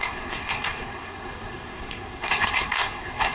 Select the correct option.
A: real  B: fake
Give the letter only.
B